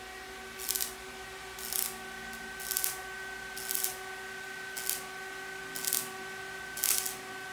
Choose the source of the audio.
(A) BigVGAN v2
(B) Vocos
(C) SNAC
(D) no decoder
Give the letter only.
D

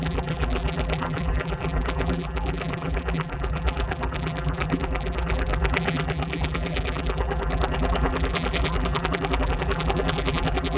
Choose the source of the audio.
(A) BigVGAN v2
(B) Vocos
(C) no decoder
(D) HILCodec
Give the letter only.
A